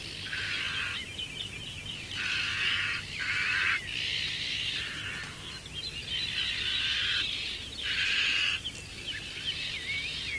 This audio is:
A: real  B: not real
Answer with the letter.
A